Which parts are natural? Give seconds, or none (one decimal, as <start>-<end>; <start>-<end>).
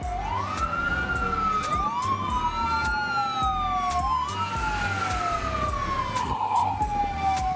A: 0.0-6.2; 6.8-7.6